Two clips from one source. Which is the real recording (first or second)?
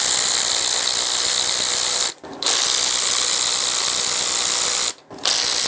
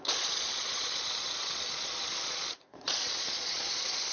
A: first